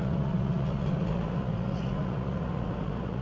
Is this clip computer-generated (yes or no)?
yes